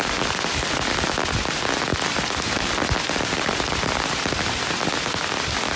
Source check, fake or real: real